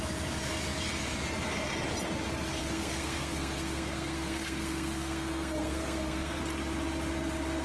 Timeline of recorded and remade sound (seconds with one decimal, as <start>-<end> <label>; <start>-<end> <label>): 0.0-2.6 recorded; 2.6-6.4 remade; 6.4-7.6 recorded